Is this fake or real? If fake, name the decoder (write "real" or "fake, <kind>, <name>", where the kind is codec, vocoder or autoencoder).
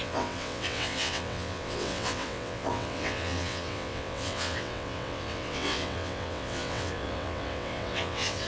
fake, vocoder, WaveNeXt